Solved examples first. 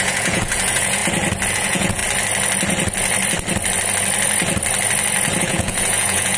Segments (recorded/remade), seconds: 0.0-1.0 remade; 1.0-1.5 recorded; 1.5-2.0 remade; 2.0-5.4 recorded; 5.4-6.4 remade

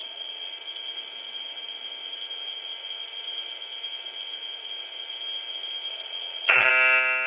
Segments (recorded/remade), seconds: 0.0-0.5 remade; 0.5-5.9 recorded; 5.9-6.7 remade; 6.7-7.3 recorded